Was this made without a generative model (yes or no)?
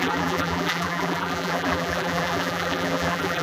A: no